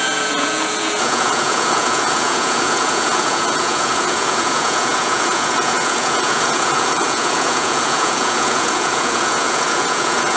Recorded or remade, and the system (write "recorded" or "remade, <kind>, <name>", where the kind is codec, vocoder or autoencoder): remade, vocoder, Vocos